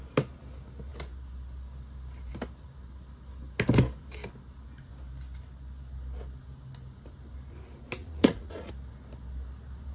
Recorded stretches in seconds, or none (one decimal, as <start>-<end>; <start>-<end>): 0.0-8.0; 8.7-9.9